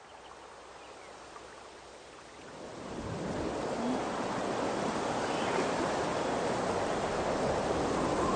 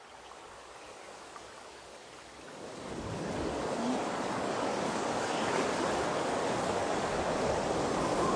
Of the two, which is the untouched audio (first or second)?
first